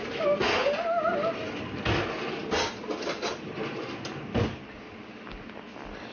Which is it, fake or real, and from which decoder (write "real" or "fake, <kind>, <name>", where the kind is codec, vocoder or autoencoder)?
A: real